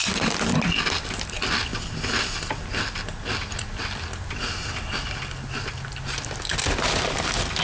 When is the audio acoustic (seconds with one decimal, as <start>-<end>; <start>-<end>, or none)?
0.0-7.6